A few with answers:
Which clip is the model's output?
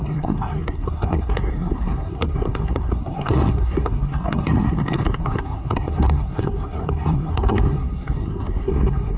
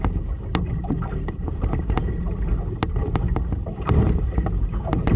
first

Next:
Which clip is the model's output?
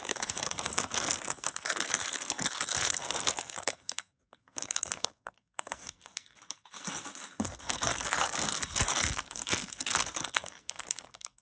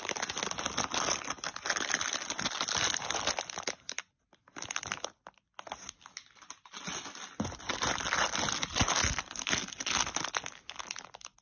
first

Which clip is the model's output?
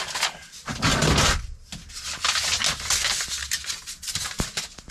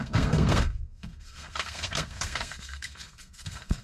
second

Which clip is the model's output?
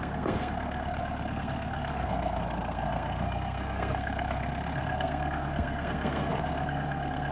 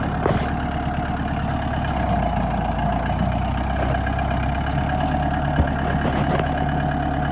first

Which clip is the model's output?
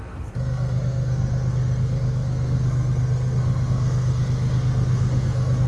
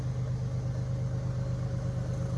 first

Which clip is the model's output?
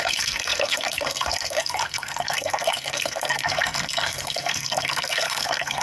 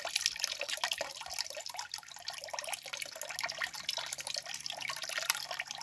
first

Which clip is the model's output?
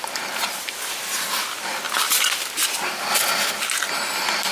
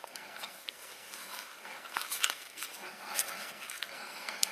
second